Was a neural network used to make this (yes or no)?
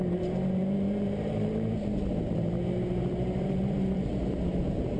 yes